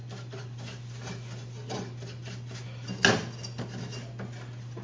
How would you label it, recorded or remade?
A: recorded